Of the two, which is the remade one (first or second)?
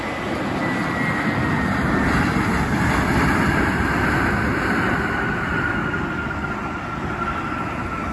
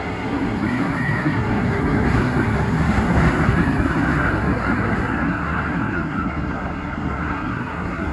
second